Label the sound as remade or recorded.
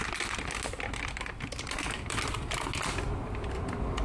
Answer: recorded